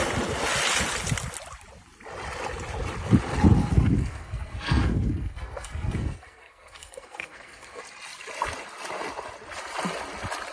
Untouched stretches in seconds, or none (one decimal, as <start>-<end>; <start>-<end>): 0.0-3.6; 7.8-10.5